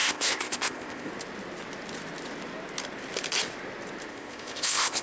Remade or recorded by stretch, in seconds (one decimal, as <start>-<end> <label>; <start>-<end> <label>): 0.0-1.1 remade; 1.1-4.1 recorded; 4.1-5.0 remade